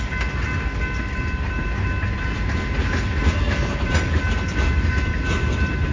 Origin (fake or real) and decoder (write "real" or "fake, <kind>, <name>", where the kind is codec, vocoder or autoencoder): real